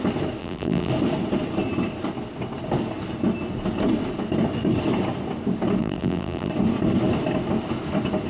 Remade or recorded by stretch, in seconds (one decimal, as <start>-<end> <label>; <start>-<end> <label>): 0.0-0.4 recorded; 0.4-0.9 remade; 0.9-5.8 recorded; 5.8-6.5 remade; 6.5-8.3 recorded

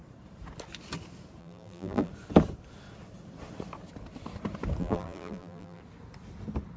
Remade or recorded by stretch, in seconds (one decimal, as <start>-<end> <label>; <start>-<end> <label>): 0.0-1.4 recorded; 1.4-2.1 remade; 2.1-4.8 recorded; 4.8-5.8 remade; 5.8-6.8 recorded